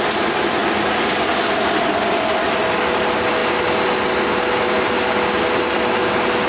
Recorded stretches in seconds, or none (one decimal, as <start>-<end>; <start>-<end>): 0.0-0.6; 1.1-6.5